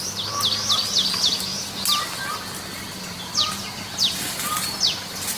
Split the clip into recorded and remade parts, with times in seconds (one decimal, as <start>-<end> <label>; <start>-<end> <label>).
0.0-5.4 recorded